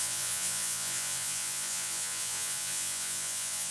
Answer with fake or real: fake